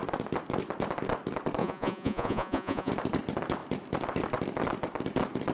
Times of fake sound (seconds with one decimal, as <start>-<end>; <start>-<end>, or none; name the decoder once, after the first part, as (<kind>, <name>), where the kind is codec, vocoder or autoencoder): 1.6-2.9 (vocoder, Vocos)